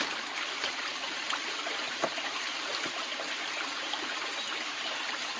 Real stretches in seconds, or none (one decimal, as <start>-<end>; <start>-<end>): none